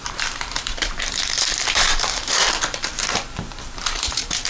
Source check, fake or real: fake